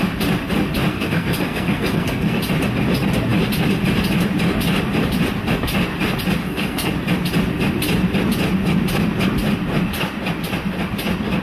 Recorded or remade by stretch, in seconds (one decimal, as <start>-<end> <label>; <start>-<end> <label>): 0.0-0.9 recorded; 0.9-2.4 remade; 2.4-6.4 recorded; 6.4-6.9 remade; 6.9-11.4 recorded